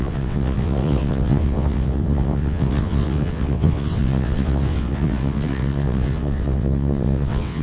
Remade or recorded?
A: remade